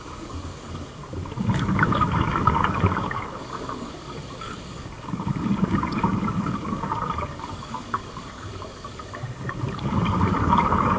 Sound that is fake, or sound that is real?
fake